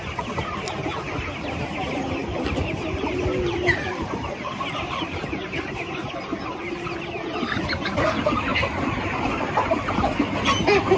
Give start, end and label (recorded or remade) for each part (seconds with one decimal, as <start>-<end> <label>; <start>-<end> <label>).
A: 0.0-2.2 recorded; 2.2-6.2 remade; 6.2-8.5 recorded; 8.5-9.2 remade; 9.2-11.0 recorded